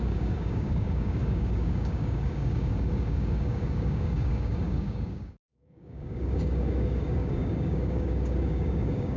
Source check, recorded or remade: remade